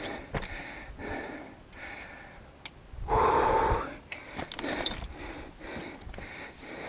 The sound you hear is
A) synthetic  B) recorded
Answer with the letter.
B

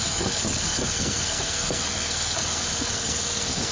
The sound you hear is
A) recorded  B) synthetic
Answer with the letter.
B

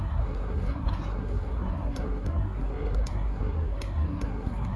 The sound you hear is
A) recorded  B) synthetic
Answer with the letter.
B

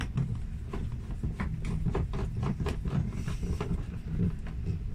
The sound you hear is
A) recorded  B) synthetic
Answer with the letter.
A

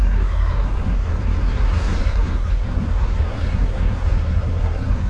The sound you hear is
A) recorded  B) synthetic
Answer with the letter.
B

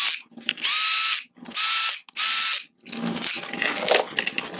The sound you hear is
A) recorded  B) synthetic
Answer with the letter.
A